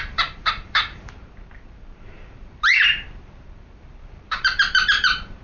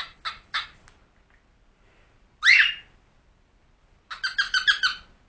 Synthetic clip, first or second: first